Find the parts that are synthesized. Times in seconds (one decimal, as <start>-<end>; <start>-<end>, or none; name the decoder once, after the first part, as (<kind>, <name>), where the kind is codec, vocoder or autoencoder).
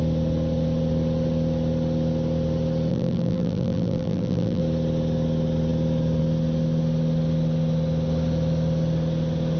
2.9-4.6 (vocoder, BigVGAN v2)